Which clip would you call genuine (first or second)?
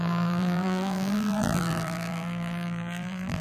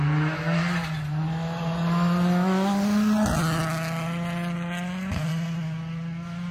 second